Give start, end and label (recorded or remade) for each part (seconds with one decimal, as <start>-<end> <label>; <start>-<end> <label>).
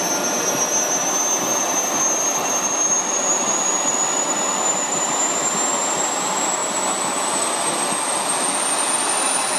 0.0-9.6 recorded